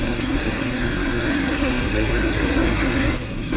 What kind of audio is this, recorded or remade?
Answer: remade